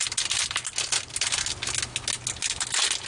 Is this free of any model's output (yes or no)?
yes